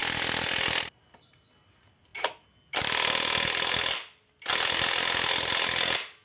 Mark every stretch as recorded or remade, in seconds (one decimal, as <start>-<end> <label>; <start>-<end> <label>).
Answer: 0.0-6.2 recorded